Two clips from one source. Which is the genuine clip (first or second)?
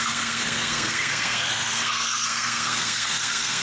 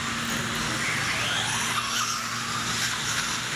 second